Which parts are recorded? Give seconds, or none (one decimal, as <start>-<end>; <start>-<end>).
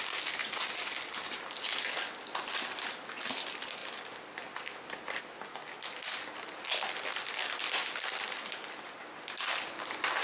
0.0-10.2